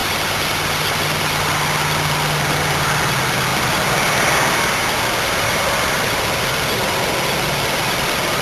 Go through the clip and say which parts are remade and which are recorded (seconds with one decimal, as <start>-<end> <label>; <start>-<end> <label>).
0.0-8.4 recorded